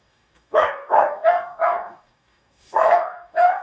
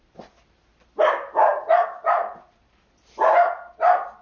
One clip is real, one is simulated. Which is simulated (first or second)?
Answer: first